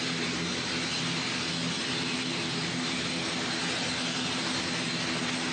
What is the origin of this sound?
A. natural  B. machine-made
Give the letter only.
A